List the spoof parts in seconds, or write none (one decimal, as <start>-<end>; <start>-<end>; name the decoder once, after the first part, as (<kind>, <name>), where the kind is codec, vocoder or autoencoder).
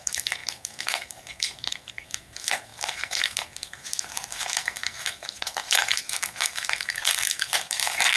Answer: 0.0-8.2 (codec, SNAC)